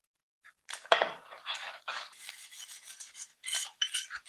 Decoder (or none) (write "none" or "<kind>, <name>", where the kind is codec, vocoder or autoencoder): codec, DAC